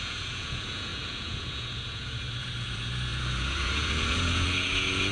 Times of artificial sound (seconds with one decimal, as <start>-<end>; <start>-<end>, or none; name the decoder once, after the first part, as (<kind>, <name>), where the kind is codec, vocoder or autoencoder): 0.0-5.1 (vocoder, Vocos)